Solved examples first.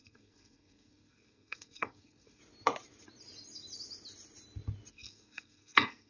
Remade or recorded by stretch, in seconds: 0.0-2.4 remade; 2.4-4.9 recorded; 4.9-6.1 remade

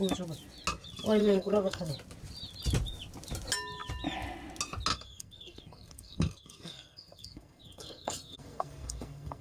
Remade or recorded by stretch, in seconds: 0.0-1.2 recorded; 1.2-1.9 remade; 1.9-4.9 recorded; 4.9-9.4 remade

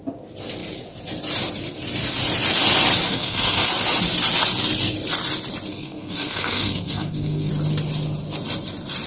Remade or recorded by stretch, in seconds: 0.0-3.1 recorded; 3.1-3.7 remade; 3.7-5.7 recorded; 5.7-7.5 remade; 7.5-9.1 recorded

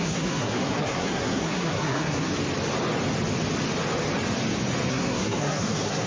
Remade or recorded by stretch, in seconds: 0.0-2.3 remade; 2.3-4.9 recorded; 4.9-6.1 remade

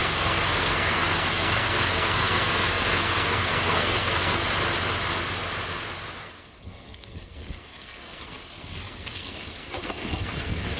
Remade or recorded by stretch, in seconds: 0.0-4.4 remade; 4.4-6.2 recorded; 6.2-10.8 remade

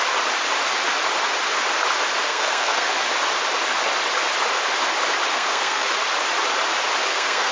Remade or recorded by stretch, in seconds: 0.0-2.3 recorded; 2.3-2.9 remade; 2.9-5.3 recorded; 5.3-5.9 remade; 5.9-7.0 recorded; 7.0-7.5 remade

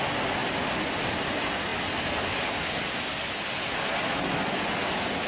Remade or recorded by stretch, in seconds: 0.0-5.3 recorded

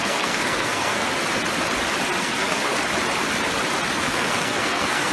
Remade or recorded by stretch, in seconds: 0.0-1.1 remade; 1.1-2.2 recorded; 2.2-2.7 remade; 2.7-4.0 recorded; 4.0-5.1 remade